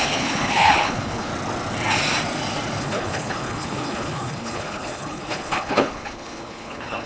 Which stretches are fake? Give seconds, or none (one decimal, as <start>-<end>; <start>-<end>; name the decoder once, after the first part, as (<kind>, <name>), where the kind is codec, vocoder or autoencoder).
0.0-1.3 (codec, HILCodec); 2.8-7.1